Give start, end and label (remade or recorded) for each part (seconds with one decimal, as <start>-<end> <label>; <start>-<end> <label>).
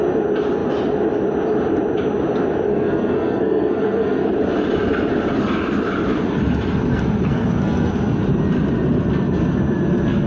0.0-2.7 recorded; 2.7-4.3 remade; 4.3-6.9 recorded; 6.9-7.9 remade; 7.9-10.3 recorded